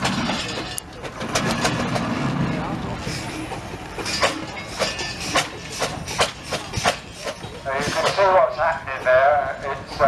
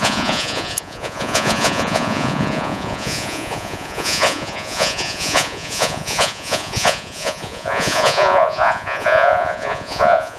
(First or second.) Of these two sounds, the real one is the first